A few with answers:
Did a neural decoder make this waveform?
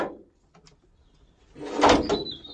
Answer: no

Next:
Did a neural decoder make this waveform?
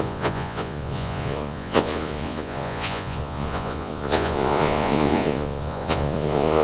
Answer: yes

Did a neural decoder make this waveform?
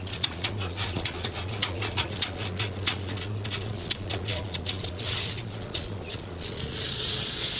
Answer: yes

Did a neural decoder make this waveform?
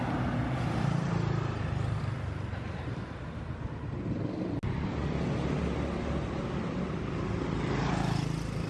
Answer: no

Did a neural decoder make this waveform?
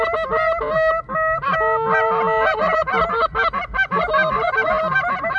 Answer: no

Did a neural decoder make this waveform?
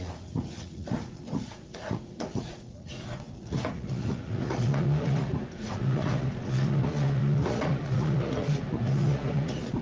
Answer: yes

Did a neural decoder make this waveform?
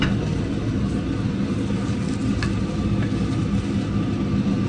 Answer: no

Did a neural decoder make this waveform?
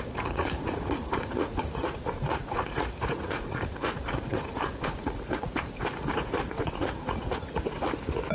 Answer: yes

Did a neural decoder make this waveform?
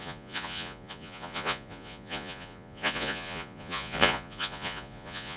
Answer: yes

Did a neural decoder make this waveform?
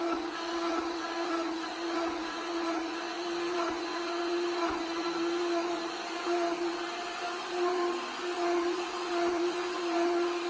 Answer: yes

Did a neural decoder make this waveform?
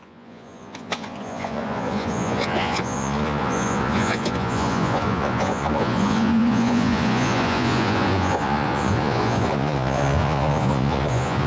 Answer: yes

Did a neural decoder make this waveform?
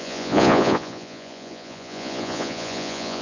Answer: yes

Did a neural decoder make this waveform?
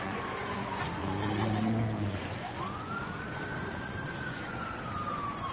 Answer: yes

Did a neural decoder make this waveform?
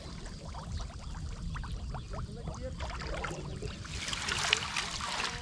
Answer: no